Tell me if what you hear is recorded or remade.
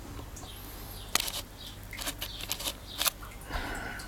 recorded